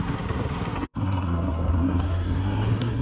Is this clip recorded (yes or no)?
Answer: no